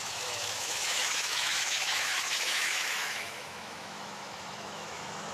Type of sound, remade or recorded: remade